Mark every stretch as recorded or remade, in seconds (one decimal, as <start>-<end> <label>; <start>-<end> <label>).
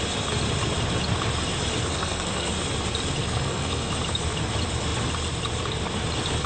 0.0-1.9 recorded; 1.9-2.5 remade; 2.5-3.2 recorded; 3.2-3.9 remade; 3.9-6.5 recorded